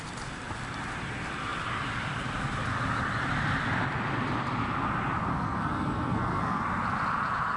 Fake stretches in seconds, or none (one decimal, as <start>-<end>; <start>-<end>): 5.3-6.6